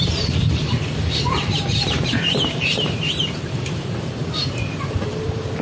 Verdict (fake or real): fake